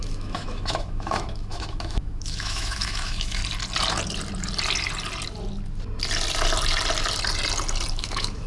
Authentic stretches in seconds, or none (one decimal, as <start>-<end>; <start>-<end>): 3.4-7.9